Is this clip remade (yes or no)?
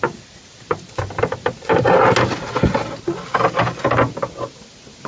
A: no